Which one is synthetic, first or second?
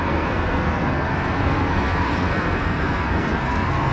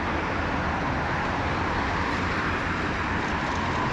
first